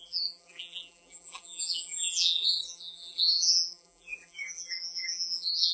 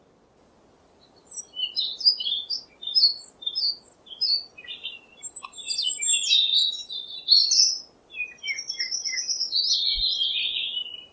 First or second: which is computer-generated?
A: first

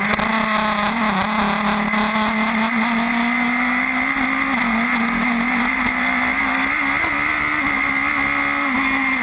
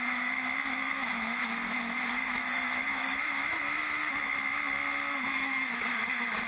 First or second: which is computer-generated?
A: second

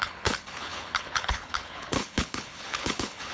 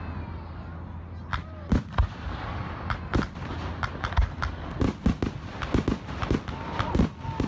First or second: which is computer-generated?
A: first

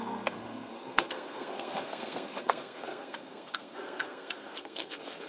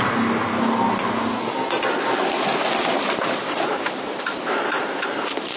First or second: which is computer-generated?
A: first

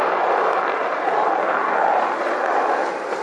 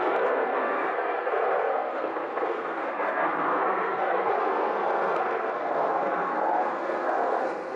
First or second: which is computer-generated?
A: second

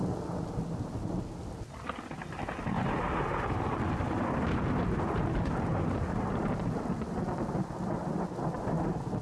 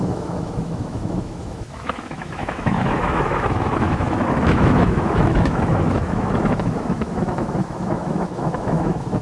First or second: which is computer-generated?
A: second